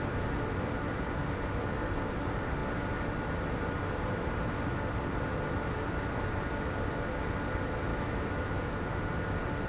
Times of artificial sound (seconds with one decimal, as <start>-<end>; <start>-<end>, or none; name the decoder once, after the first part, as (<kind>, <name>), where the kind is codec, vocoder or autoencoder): 7.9-8.7 (autoencoder, DAC-VAE)